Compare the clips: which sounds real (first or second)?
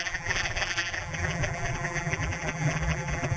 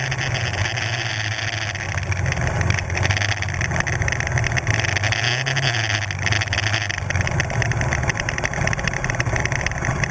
second